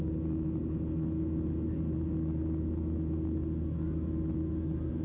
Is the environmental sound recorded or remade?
recorded